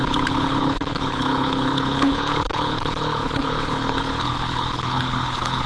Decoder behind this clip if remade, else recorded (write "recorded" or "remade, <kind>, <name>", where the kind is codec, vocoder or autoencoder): remade, codec, HILCodec